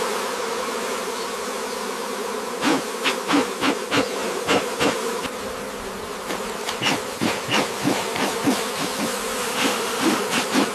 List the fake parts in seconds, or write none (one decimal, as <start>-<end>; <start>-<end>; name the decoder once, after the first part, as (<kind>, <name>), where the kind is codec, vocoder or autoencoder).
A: 9.4-10.2 (autoencoder, DAC-VAE)